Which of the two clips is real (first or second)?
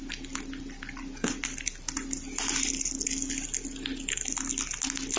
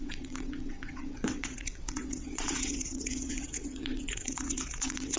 first